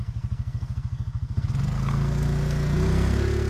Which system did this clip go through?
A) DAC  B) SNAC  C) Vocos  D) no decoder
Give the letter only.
B